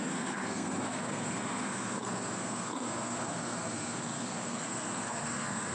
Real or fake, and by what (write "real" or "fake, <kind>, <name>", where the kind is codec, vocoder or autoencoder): fake, codec, SNAC